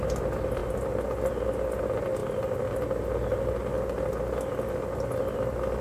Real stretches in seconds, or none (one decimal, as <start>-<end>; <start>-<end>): 0.0-5.8

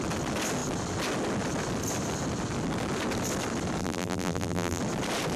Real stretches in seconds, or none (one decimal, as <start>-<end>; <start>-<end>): 0.0-3.8; 4.8-5.4